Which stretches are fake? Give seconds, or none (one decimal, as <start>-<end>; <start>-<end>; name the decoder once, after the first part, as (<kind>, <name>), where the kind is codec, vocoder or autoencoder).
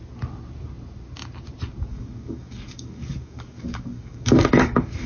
1.9-5.1 (codec, DAC)